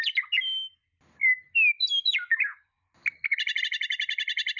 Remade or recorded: recorded